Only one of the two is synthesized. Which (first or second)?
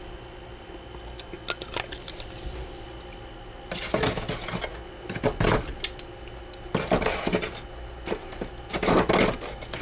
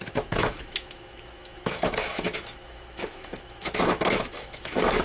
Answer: second